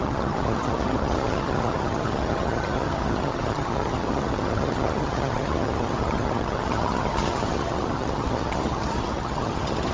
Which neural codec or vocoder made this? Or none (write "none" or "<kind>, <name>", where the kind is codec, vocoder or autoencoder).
vocoder, HiFi-GAN